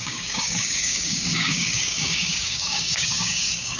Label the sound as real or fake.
fake